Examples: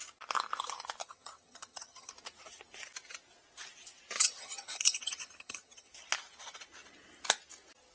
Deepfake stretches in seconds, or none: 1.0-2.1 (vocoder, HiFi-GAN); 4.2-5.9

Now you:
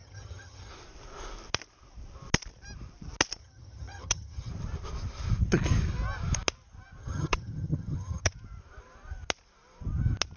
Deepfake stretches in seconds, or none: 0.0-0.7 (vocoder, HiFi-GAN); 3.4-4.5; 7.0-8.3